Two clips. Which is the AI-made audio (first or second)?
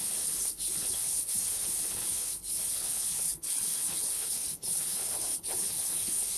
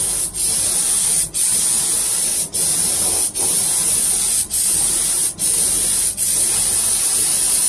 first